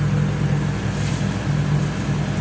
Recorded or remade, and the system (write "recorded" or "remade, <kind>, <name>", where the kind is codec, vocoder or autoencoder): recorded